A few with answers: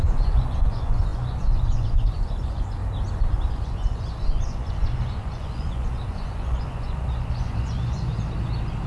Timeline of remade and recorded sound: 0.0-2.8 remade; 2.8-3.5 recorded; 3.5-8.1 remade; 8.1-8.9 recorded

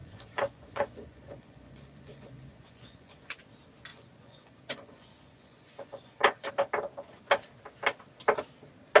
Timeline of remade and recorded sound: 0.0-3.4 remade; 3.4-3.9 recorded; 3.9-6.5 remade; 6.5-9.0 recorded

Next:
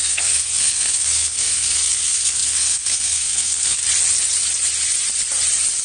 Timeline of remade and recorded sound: 0.0-3.8 remade; 3.8-5.8 recorded

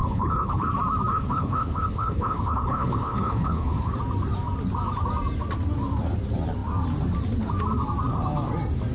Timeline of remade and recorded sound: 0.0-0.7 remade; 0.7-1.1 recorded; 1.1-3.9 remade; 3.9-8.9 recorded

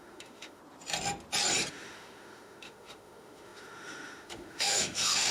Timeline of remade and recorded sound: 0.0-0.6 remade; 0.6-1.7 recorded; 1.7-5.3 remade

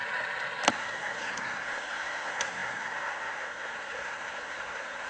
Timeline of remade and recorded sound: 0.0-0.7 recorded; 0.7-5.1 remade

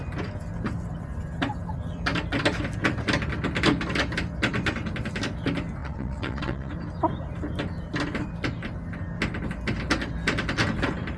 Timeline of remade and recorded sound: 0.0-5.8 recorded; 5.8-6.7 remade; 6.7-11.2 recorded